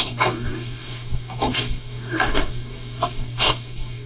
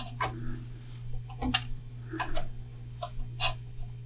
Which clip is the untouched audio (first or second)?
second